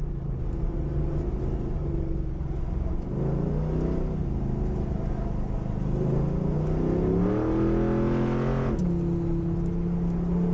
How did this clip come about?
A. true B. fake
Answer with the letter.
A